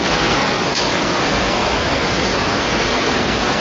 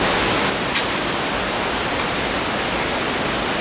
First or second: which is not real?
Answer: first